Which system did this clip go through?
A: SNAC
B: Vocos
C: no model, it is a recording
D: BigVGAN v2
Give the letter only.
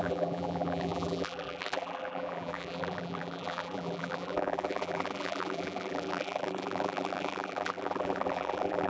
D